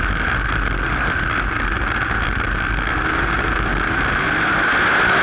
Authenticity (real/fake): real